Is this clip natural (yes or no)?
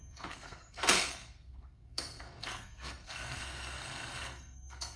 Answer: no